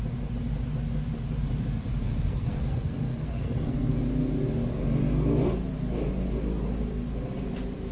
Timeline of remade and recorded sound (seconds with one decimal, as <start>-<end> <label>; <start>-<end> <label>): 0.0-1.9 recorded; 1.9-4.0 remade; 4.0-7.9 recorded